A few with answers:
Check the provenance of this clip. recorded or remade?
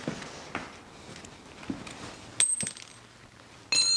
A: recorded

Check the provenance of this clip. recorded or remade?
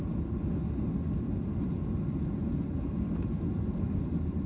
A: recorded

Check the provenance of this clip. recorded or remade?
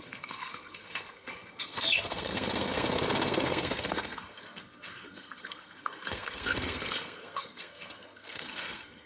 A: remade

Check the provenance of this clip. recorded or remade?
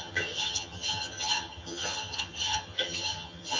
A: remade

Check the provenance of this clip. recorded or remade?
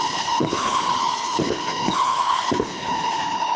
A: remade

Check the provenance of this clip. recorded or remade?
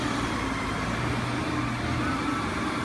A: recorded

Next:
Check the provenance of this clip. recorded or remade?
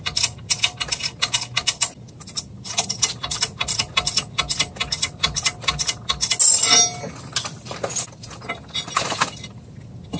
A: recorded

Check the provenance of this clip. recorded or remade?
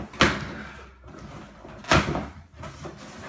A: recorded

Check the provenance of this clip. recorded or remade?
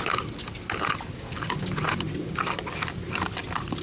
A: recorded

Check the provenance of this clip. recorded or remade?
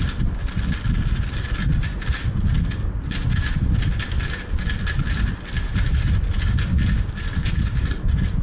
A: recorded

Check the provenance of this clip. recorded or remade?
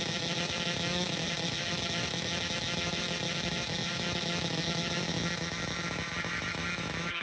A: remade